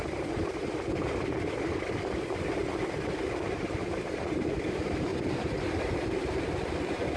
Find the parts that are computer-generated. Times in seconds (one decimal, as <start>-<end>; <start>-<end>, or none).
0.0-0.6; 3.6-7.2